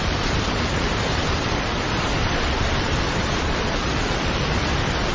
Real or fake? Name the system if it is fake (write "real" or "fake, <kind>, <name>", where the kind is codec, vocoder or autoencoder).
fake, vocoder, BigVGAN v2